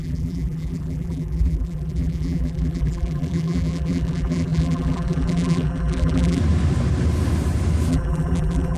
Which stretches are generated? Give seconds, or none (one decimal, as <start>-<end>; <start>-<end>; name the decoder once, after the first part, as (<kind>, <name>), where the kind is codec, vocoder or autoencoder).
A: 0.0-6.4 (vocoder, BigVGAN v2); 7.9-8.8